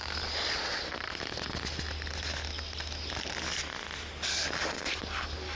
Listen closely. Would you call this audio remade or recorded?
recorded